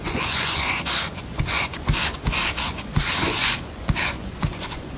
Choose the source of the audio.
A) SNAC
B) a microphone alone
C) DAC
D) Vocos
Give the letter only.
D